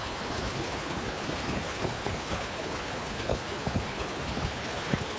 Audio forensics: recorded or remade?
remade